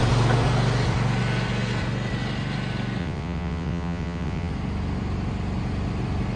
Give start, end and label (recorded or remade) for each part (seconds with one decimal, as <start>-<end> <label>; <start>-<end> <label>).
0.0-3.0 recorded; 3.0-4.5 remade; 4.5-6.4 recorded